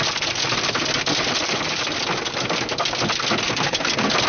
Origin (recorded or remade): recorded